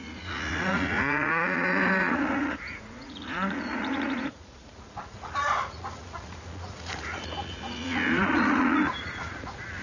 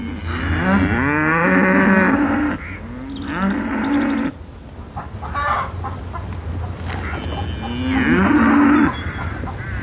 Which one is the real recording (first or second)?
second